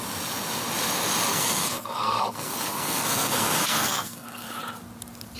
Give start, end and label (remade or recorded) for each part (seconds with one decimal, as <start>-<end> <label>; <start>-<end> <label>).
0.0-1.3 recorded; 1.3-4.5 remade; 4.5-5.4 recorded

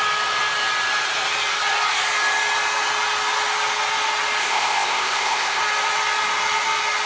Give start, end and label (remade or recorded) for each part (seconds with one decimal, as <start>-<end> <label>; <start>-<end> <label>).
0.0-4.4 recorded; 4.4-5.6 remade; 5.6-7.1 recorded